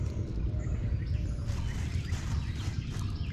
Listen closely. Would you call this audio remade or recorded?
recorded